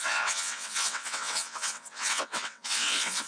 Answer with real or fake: fake